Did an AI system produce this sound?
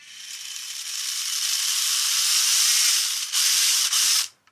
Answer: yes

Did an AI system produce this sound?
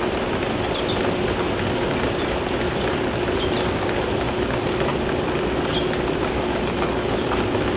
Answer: no